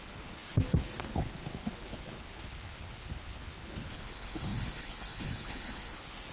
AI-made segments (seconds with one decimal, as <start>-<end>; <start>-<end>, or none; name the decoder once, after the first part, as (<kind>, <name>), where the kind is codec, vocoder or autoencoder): 0.0-6.3 (codec, HILCodec)